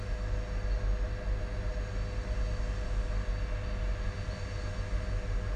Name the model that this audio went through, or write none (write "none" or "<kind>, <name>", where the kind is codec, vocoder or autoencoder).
none